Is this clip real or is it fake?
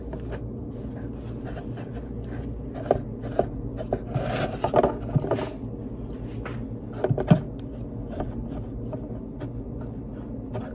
real